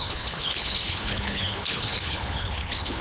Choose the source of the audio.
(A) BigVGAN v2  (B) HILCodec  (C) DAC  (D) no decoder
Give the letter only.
B